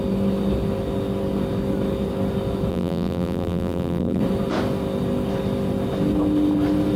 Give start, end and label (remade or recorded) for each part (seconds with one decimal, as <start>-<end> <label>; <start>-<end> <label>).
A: 0.0-2.7 recorded; 2.7-4.2 remade; 4.2-7.0 recorded